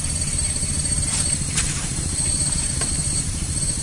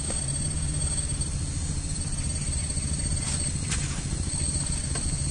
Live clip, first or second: second